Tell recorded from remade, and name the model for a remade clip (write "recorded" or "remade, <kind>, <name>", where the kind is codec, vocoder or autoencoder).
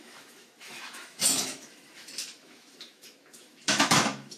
remade, autoencoder, DAC-VAE